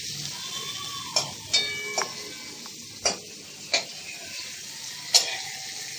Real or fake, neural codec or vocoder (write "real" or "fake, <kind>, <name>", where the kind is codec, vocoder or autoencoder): real